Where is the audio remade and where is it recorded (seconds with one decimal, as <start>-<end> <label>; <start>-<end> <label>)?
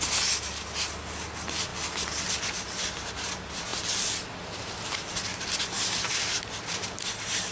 0.0-1.7 recorded; 1.7-2.4 remade; 2.4-3.7 recorded; 3.7-6.1 remade; 6.1-7.5 recorded